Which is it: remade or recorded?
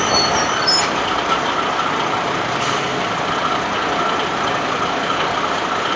remade